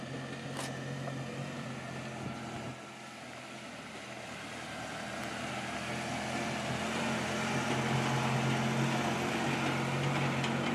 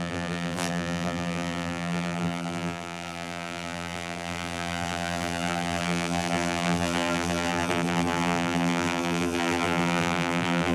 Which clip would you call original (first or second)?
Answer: first